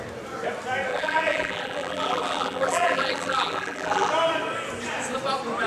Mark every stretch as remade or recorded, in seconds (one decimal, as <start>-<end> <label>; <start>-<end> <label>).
0.0-0.9 recorded; 0.9-4.1 remade; 4.1-5.7 recorded

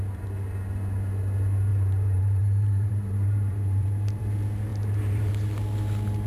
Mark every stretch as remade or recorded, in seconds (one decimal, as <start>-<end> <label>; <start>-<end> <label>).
0.0-1.7 recorded; 1.7-4.2 remade; 4.2-4.7 recorded; 4.7-5.3 remade; 5.3-6.3 recorded

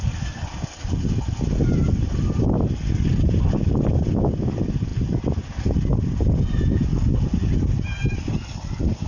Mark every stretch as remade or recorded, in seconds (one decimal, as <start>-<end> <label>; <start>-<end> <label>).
0.0-9.1 recorded

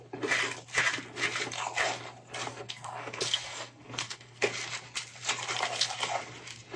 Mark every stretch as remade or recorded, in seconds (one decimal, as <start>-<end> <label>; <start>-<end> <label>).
0.0-2.5 recorded; 2.5-4.5 remade; 4.5-6.8 recorded

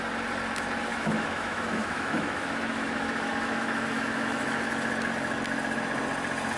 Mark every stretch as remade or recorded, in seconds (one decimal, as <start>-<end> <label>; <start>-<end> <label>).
0.0-0.9 recorded; 0.9-4.7 remade; 4.7-6.6 recorded

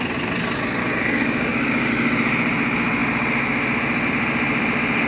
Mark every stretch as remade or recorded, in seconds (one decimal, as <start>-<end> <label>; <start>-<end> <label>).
0.0-0.8 recorded; 0.8-1.9 remade; 1.9-5.1 recorded